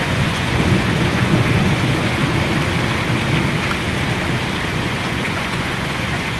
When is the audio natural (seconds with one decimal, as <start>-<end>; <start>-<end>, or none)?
2.2-4.7